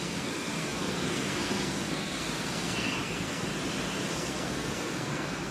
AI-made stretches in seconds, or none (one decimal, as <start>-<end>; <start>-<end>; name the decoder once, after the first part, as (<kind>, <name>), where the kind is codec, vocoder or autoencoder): 0.0-3.5 (codec, SNAC); 4.1-5.5